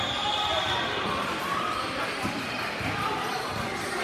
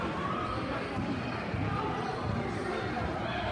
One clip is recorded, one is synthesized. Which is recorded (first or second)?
second